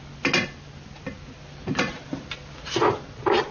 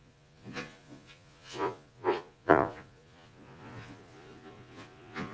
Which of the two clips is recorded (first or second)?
first